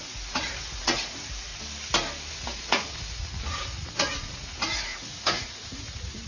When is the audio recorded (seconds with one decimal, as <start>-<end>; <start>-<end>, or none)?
1.5-2.3